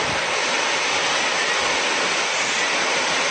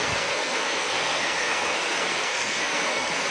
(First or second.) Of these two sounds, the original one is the first